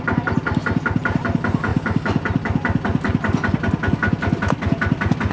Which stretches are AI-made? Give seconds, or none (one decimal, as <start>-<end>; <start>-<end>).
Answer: none